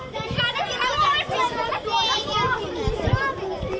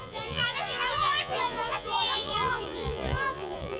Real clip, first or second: first